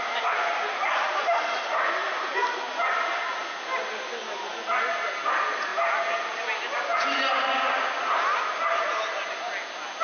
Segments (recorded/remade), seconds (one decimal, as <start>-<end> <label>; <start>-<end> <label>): 0.0-10.0 recorded